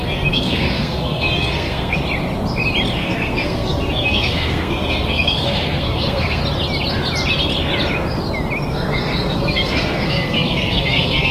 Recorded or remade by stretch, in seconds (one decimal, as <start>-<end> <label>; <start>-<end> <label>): 0.0-2.0 remade; 2.0-3.0 recorded; 3.0-6.4 remade; 6.4-8.7 recorded; 8.7-11.3 remade